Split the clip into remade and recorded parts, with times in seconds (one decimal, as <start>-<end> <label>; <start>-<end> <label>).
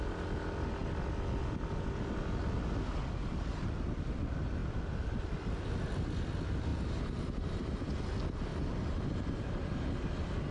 0.0-6.7 recorded; 6.7-8.0 remade; 8.0-8.5 recorded; 8.5-9.0 remade; 9.0-10.5 recorded